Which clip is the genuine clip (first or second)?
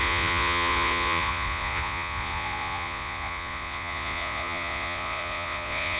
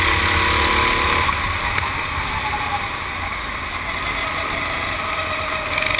second